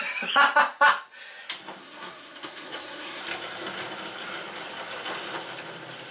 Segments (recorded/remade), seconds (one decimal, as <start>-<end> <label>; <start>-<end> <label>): 0.0-1.8 recorded; 1.8-3.2 remade; 3.2-6.1 recorded